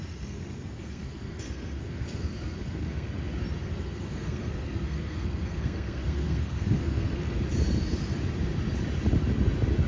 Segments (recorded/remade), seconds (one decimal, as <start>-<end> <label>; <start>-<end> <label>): 0.0-3.1 remade; 3.1-3.6 recorded; 3.6-7.4 remade; 7.4-9.9 recorded